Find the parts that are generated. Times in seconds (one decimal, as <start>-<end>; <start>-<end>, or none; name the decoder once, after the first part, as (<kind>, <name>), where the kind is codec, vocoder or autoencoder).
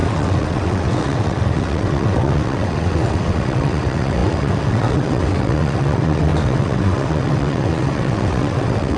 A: 0.0-9.0 (vocoder, WaveNeXt)